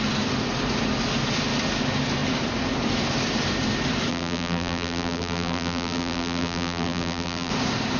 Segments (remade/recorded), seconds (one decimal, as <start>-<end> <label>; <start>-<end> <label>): 0.0-4.1 recorded; 4.1-7.5 remade; 7.5-8.0 recorded